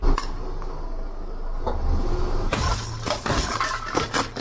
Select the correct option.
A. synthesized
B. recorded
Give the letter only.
B